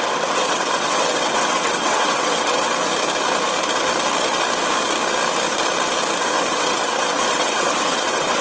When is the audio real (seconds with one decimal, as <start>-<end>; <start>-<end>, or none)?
2.7-6.2